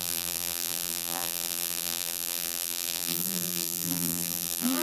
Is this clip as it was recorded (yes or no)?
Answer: no